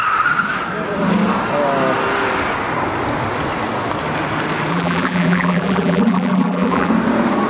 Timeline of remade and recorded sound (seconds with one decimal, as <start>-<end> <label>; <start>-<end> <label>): 0.0-4.7 recorded; 4.7-6.9 remade; 6.9-7.5 recorded